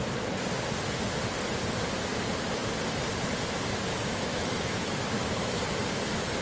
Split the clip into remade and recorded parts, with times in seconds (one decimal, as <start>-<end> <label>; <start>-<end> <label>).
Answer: 0.0-3.9 recorded; 3.9-5.6 remade; 5.6-6.4 recorded